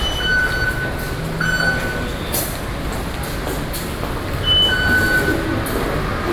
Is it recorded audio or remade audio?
recorded